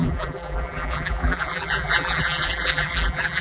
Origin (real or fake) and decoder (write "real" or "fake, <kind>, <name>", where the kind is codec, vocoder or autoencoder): fake, vocoder, BigVGAN v2